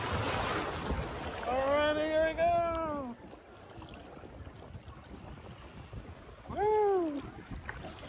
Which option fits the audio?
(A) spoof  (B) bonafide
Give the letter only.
B